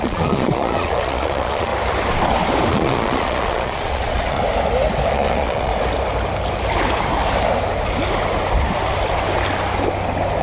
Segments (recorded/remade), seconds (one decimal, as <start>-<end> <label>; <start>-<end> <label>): 0.0-1.7 remade; 1.7-2.7 recorded; 2.7-4.4 remade; 4.4-5.1 recorded; 5.1-5.7 remade; 5.7-10.4 recorded